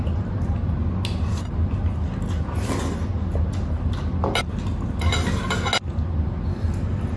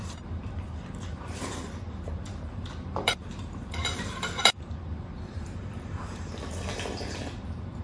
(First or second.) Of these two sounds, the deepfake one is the second